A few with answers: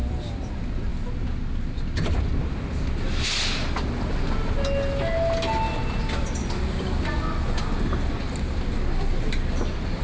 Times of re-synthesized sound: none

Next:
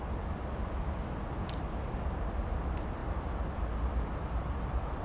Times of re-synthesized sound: none

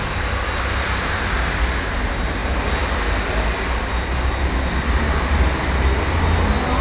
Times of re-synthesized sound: none

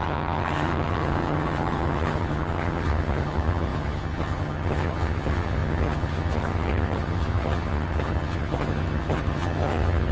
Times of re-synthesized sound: 0.0-10.1 (vocoder, HiFi-GAN)

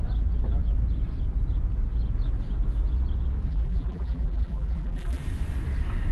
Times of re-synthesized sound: 3.5-5.2 (vocoder, BigVGAN v2)

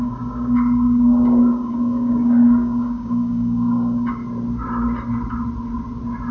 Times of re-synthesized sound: 0.0-4.2 (codec, DAC)